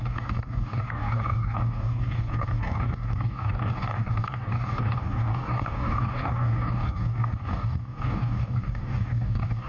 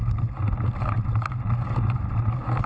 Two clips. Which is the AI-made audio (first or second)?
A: first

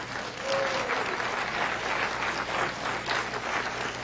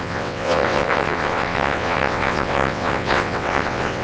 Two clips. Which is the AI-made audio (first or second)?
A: second